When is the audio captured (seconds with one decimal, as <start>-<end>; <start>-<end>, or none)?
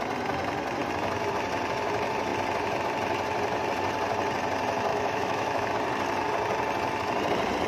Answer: 0.0-4.9; 5.7-7.7